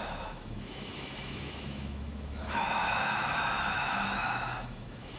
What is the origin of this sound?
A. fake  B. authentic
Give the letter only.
A